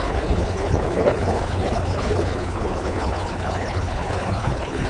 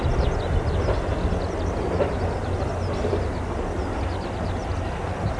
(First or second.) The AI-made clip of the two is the first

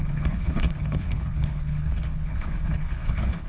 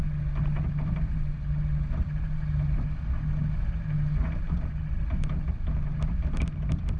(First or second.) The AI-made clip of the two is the first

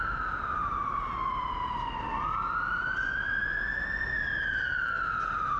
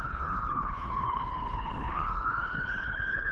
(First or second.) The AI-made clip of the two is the second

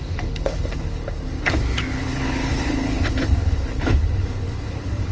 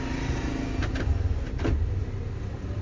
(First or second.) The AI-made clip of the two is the first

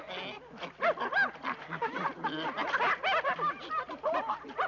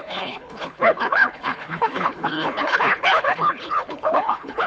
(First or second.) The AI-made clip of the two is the second